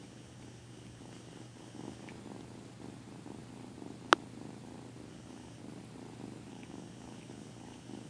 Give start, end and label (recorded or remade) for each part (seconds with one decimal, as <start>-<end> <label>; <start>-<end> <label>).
0.0-2.1 remade; 2.1-5.1 recorded; 5.1-5.6 remade; 5.6-6.5 recorded; 6.5-8.1 remade